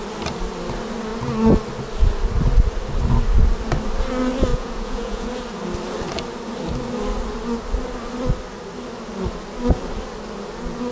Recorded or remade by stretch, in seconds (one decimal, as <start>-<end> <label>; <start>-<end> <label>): 0.0-4.5 recorded; 4.5-5.3 remade; 5.3-10.9 recorded

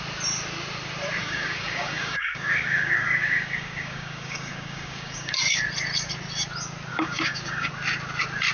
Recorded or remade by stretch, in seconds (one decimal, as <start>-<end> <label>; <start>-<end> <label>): 0.0-1.2 recorded; 1.2-5.3 remade; 5.3-6.9 recorded; 6.9-7.7 remade; 7.7-8.5 recorded